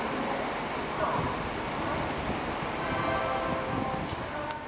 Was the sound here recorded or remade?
recorded